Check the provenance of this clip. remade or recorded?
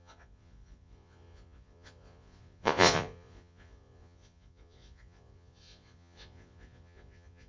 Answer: remade